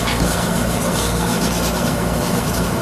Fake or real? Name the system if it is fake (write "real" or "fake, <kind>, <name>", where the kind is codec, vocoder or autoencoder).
fake, codec, SNAC